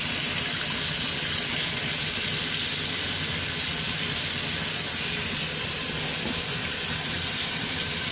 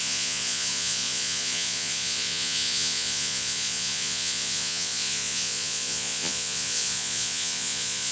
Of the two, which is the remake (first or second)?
second